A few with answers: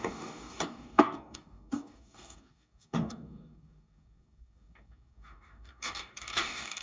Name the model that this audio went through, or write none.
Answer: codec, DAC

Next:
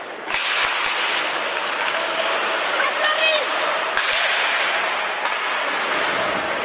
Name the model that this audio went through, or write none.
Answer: none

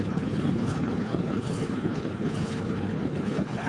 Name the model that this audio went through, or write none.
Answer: codec, HILCodec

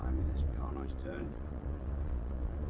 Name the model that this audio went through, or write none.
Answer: vocoder, Vocos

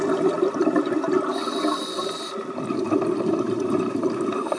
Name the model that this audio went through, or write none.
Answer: none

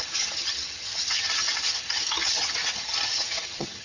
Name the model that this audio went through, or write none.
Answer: vocoder, HiFi-GAN